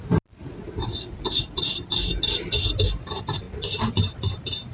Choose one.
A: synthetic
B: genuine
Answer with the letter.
B